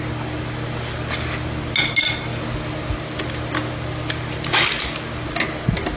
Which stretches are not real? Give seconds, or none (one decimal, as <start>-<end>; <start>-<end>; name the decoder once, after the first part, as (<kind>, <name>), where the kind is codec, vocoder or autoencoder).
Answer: none